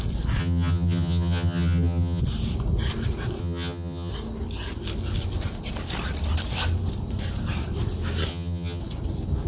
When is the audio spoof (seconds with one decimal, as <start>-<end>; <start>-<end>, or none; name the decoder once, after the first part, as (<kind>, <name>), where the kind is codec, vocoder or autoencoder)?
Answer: 0.4-2.2 (vocoder, HiFi-GAN); 3.4-4.1; 8.3-8.8